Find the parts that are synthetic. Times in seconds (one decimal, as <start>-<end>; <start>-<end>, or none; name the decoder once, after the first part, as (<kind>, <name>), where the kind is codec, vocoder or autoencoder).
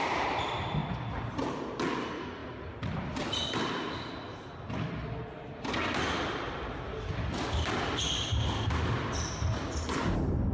none